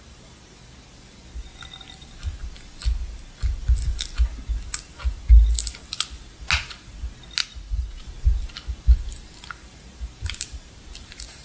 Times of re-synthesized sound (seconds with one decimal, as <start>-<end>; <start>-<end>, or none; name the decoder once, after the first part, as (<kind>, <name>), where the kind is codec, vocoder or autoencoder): 7.4-8.0 (vocoder, Vocos)